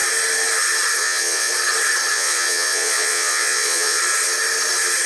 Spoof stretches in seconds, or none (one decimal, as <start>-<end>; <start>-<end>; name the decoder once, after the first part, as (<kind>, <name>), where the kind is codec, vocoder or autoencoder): 1.0-1.5 (vocoder, Vocos); 2.1-4.0